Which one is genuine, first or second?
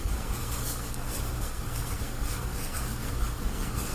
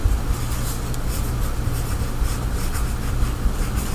second